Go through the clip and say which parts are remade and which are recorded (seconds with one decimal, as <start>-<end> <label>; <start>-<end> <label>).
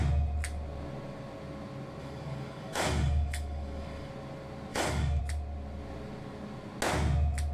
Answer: 0.0-2.0 recorded; 2.0-4.1 remade; 4.1-4.7 recorded; 4.7-5.2 remade; 5.2-7.5 recorded